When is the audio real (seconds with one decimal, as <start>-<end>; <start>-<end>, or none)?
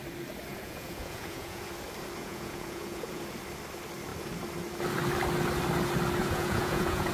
0.0-0.5; 1.6-2.2; 3.2-6.2